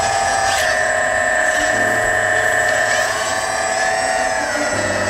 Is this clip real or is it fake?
fake